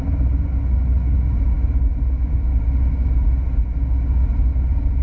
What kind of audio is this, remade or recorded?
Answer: recorded